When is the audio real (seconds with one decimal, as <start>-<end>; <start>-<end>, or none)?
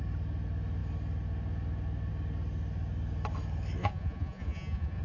0.0-3.8